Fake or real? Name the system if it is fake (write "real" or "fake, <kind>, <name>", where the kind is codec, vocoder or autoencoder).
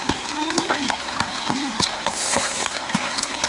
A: fake, codec, SNAC